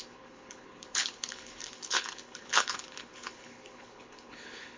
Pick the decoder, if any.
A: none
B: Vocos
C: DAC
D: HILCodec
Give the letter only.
D